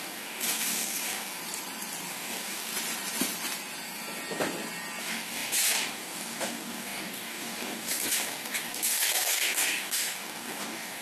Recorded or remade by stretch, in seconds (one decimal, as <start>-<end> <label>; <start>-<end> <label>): 0.0-1.4 remade; 1.4-2.1 recorded; 2.1-2.7 remade; 2.7-5.0 recorded; 5.0-11.0 remade